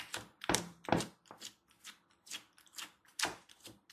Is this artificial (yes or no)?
no